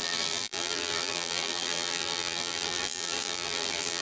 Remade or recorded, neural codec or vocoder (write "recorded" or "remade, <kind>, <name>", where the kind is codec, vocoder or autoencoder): remade, vocoder, BigVGAN v2